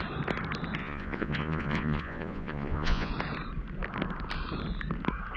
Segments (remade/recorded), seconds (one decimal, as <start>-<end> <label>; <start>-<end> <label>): 0.0-0.8 recorded; 0.8-3.1 remade; 3.1-5.4 recorded